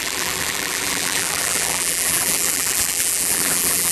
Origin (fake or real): fake